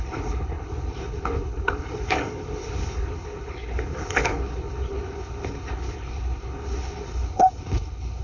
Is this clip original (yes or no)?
no